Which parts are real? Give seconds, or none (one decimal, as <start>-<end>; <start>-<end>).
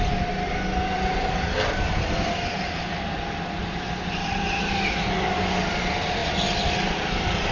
0.0-7.5